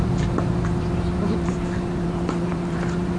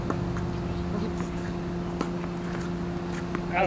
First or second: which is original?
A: second